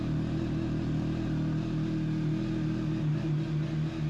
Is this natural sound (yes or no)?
yes